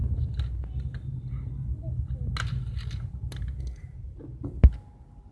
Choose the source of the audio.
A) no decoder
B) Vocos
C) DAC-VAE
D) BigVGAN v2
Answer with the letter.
A